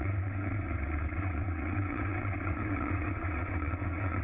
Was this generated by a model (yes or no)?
yes